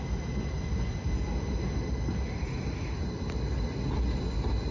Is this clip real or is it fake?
real